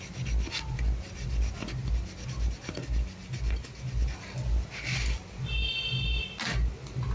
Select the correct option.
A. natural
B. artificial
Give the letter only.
A